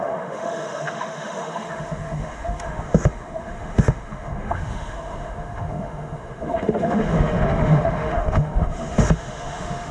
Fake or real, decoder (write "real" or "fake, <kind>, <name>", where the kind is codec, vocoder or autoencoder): fake, autoencoder, DAC-VAE